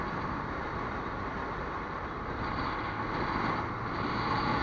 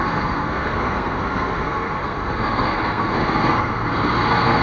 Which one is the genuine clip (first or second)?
first